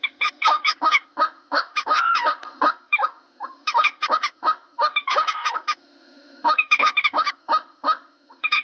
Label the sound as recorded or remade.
remade